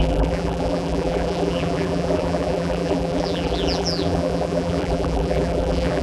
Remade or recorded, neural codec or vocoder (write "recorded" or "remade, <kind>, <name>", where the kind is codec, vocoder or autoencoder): remade, vocoder, BigVGAN v2